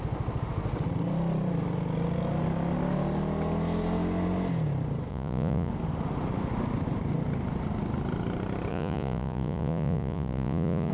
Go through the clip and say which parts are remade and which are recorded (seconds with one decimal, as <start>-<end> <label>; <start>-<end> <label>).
0.0-5.1 recorded; 5.1-5.7 remade; 5.7-8.7 recorded; 8.7-10.9 remade